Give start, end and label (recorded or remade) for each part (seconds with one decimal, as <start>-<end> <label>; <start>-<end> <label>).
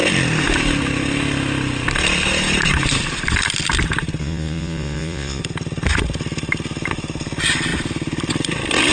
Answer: 0.0-4.2 recorded; 4.2-5.4 remade; 5.4-8.9 recorded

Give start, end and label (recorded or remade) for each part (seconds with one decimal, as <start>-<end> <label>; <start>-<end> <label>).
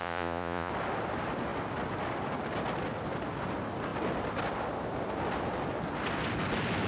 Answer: 0.0-0.7 remade; 0.7-6.9 recorded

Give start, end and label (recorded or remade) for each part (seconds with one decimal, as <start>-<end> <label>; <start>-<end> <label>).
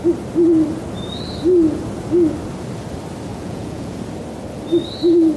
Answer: 0.0-3.3 recorded; 3.3-4.0 remade; 4.0-5.4 recorded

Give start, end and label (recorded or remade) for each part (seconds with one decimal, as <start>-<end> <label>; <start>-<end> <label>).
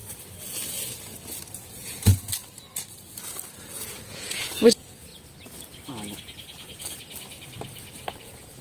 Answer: 0.0-1.7 recorded; 1.7-2.1 remade; 2.1-3.6 recorded; 3.6-5.1 remade; 5.1-8.2 recorded; 8.2-8.6 remade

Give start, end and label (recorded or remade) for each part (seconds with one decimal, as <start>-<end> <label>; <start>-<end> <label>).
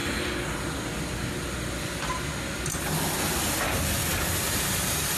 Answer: 0.0-5.2 recorded